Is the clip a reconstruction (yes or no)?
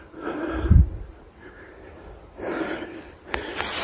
yes